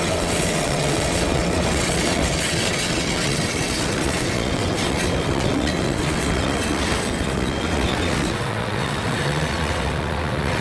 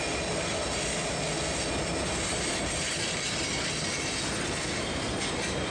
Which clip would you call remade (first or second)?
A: first